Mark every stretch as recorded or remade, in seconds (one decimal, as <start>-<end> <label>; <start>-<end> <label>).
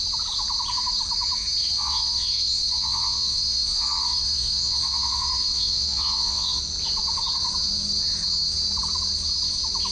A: 0.0-1.6 recorded; 1.6-6.6 remade; 6.6-9.9 recorded